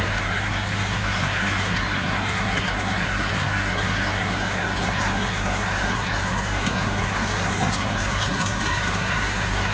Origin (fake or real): fake